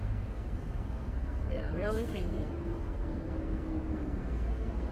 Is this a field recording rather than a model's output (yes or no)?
no